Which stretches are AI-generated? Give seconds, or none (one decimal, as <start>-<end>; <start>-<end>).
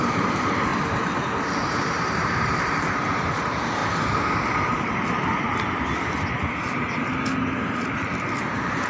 0.0-0.7; 1.7-3.8; 8.4-8.9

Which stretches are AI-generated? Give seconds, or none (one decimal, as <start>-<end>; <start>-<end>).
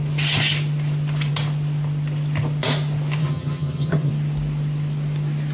3.2-4.1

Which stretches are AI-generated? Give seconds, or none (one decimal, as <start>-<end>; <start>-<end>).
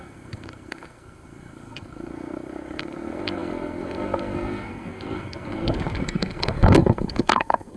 0.0-7.8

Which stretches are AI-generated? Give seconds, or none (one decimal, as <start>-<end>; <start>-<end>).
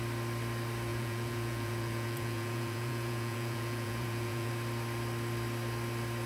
0.9-4.5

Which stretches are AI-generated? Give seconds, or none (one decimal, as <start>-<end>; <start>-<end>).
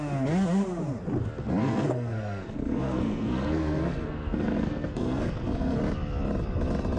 1.6-5.8